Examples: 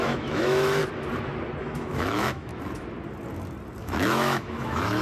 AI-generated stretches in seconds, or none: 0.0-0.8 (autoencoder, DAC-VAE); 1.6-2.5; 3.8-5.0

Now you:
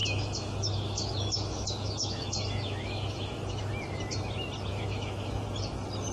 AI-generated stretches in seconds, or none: 0.0-3.7 (autoencoder, DAC-VAE); 4.7-5.4

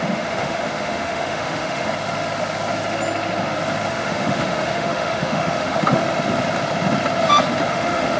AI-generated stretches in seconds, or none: 0.0-1.9 (autoencoder, DAC-VAE); 3.9-6.0; 7.7-8.2

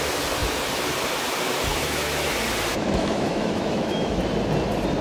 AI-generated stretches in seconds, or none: 1.7-2.3 (autoencoder, DAC-VAE); 2.7-4.2

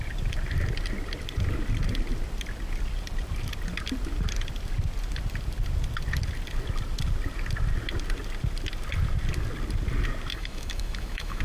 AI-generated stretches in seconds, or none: 10.3-11.4 (autoencoder, DAC-VAE)